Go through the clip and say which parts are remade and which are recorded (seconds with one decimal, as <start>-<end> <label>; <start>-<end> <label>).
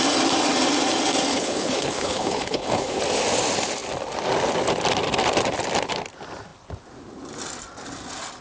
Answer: 0.0-1.3 recorded; 1.3-3.0 remade; 3.0-8.4 recorded